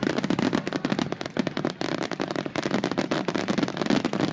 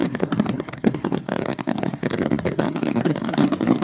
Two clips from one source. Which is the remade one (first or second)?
second